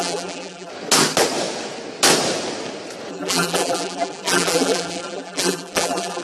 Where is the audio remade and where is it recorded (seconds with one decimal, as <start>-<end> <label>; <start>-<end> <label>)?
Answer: 0.0-0.7 remade; 0.7-3.1 recorded; 3.1-6.2 remade